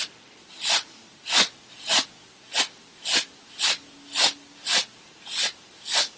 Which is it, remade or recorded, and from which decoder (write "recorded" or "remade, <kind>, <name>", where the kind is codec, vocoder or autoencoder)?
recorded